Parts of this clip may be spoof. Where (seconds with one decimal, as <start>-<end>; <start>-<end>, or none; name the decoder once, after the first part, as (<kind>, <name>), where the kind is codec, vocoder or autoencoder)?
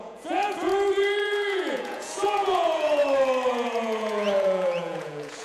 0.0-0.7 (vocoder, Vocos); 1.2-3.0; 3.5-5.4